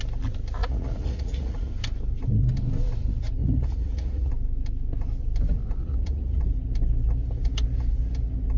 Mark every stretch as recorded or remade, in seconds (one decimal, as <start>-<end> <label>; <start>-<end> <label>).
0.0-0.6 recorded; 0.6-1.7 remade; 1.7-3.4 recorded; 3.4-4.3 remade; 4.3-5.8 recorded; 5.8-6.4 remade; 6.4-8.6 recorded